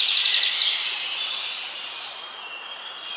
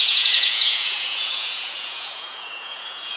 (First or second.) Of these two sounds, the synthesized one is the second